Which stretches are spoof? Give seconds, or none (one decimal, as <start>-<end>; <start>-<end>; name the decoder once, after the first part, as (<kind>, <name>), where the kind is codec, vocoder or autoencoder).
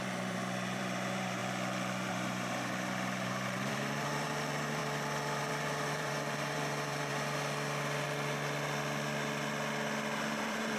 0.0-1.4 (vocoder, BigVGAN v2); 2.1-4.8; 5.4-7.1; 10.4-10.8